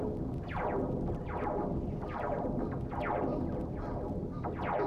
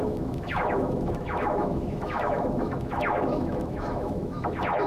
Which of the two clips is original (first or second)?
first